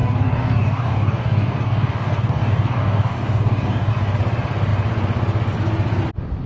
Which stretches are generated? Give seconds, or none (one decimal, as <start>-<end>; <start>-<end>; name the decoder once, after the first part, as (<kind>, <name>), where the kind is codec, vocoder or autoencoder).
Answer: 0.0-3.9 (codec, DAC)